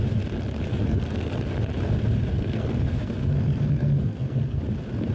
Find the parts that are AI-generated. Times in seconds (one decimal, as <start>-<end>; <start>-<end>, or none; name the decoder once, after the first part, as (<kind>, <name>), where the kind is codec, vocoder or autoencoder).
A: 0.7-1.5 (codec, SNAC); 2.3-4.6